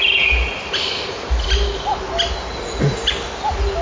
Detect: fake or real real